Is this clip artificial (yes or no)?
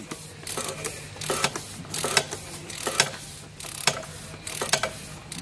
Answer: no